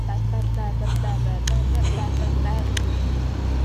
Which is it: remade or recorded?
recorded